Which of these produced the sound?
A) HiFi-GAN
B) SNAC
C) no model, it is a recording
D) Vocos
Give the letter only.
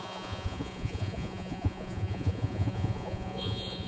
D